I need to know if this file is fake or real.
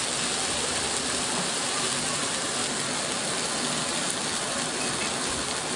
real